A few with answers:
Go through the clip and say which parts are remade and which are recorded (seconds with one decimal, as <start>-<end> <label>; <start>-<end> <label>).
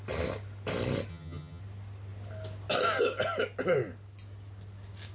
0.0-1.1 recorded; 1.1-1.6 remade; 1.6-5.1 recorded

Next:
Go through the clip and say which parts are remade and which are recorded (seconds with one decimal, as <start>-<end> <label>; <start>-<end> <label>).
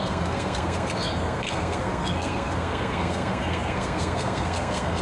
0.0-5.0 remade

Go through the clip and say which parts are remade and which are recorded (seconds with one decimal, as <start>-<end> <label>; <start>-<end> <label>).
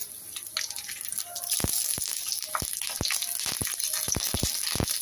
0.0-5.0 recorded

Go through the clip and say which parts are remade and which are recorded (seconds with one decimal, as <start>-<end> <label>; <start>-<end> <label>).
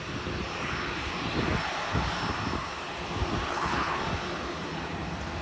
0.0-3.4 recorded; 3.4-4.0 remade; 4.0-5.4 recorded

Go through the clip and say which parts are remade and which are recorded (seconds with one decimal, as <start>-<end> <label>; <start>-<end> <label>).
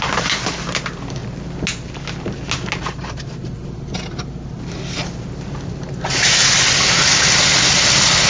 0.0-1.2 remade; 1.2-2.8 recorded; 2.8-8.3 remade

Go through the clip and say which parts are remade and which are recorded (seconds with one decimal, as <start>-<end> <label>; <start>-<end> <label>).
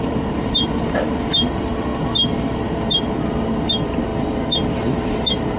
0.0-1.9 remade; 1.9-2.7 recorded; 2.7-5.6 remade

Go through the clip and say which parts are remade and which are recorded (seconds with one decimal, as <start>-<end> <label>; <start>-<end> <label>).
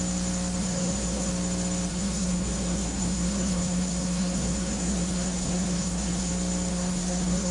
0.0-0.6 recorded; 0.6-1.3 remade; 1.3-1.9 recorded; 1.9-6.3 remade; 6.3-6.7 recorded; 6.7-7.5 remade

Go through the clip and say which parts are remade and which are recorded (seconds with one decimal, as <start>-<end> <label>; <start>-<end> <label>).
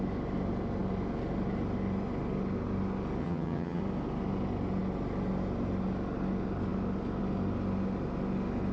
0.0-3.2 recorded; 3.2-3.8 remade; 3.8-8.7 recorded